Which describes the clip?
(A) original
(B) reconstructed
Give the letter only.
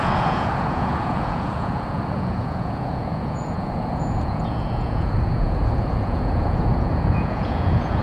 B